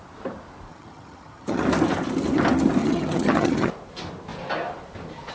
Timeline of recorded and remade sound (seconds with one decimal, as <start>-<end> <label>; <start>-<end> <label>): 0.0-0.7 recorded; 0.7-1.6 remade; 1.6-2.8 recorded; 2.8-3.7 remade; 3.7-5.3 recorded